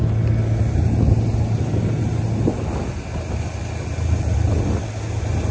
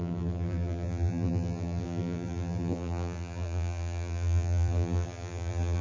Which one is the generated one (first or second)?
second